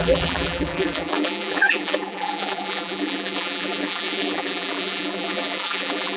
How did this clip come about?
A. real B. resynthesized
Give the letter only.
B